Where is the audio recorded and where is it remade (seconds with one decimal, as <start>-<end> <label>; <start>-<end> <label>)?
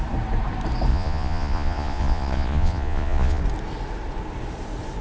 0.0-0.9 recorded; 0.9-3.4 remade; 3.4-5.0 recorded